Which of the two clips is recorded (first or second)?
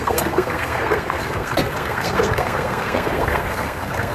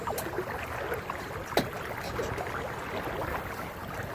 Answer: second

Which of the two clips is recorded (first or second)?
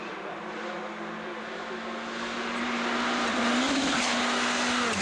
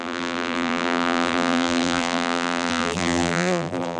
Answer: first